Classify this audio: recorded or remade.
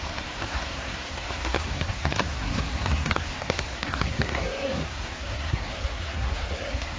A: remade